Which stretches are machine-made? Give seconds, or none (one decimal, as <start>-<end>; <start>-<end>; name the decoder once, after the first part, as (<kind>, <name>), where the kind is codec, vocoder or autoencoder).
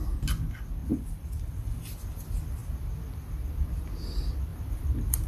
0.8-1.8 (vocoder, BigVGAN v2); 2.6-3.5; 4.5-5.3